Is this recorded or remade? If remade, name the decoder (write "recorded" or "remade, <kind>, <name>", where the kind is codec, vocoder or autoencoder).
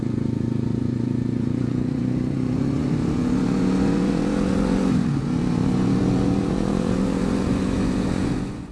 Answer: remade, vocoder, Vocos